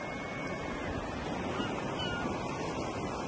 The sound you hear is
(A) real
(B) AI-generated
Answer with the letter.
A